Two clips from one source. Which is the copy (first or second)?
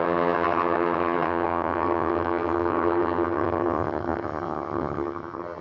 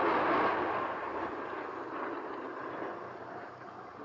first